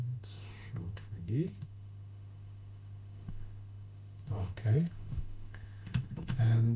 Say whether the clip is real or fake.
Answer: fake